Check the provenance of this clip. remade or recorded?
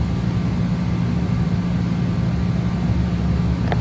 recorded